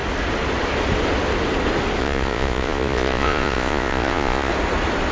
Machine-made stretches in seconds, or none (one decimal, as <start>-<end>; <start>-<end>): 2.0-4.5